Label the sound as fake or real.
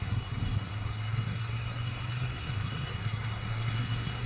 fake